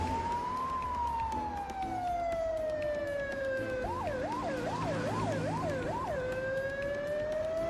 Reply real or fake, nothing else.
real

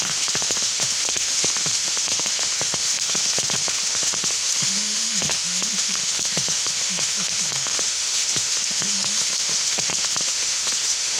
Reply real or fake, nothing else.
fake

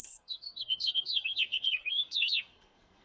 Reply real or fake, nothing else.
fake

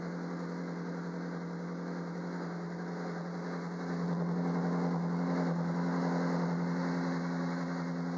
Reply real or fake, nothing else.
real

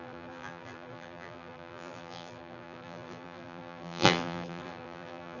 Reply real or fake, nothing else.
fake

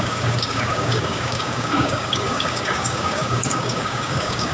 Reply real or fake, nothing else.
fake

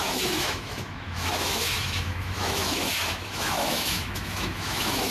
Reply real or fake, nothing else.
fake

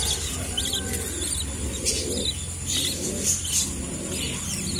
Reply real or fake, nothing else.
real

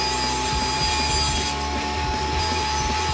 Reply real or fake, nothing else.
real